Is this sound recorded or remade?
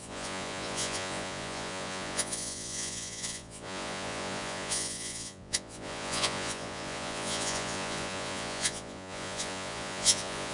remade